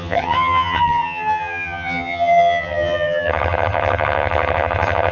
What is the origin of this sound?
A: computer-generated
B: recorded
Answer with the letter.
A